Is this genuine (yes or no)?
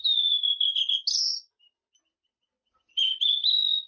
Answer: yes